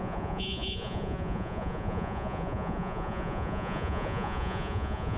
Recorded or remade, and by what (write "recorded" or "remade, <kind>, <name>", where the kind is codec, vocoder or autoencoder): remade, vocoder, Vocos